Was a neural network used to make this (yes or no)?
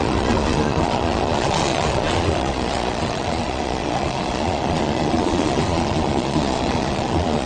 yes